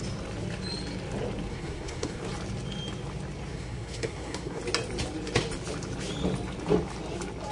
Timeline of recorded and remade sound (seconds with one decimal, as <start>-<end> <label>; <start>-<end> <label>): 0.0-1.5 recorded; 1.5-2.2 remade; 2.2-3.5 recorded; 3.5-4.6 remade; 4.6-7.5 recorded